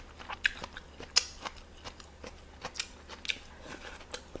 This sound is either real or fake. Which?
real